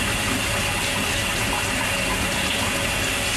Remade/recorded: recorded